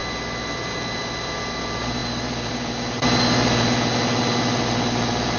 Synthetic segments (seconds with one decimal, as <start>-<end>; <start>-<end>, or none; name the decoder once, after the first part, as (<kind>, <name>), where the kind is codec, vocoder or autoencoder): none